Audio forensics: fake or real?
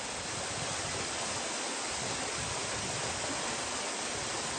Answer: real